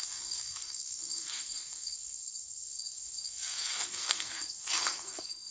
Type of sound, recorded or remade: remade